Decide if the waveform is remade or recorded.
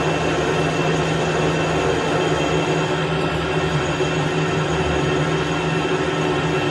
recorded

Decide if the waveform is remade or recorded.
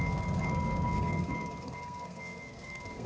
remade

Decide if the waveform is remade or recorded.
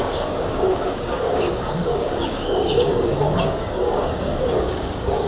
remade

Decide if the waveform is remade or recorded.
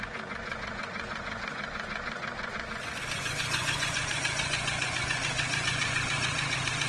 remade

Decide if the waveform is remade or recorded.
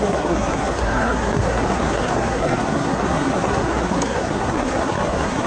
remade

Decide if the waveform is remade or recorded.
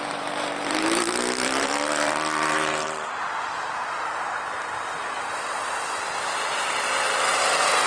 remade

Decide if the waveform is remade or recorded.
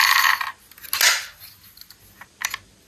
recorded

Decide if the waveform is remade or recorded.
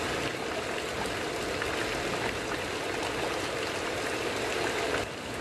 recorded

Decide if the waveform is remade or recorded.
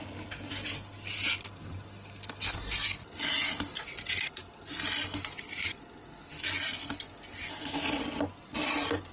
recorded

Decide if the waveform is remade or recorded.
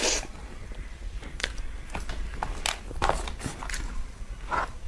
recorded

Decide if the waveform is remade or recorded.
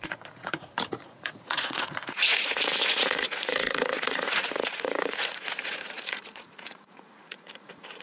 remade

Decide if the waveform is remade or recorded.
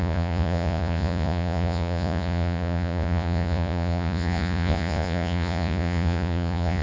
remade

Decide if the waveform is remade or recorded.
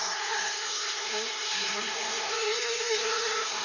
remade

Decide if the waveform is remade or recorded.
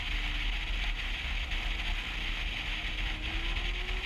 recorded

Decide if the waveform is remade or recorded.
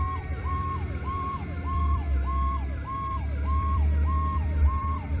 remade